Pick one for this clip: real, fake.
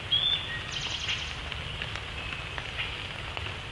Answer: real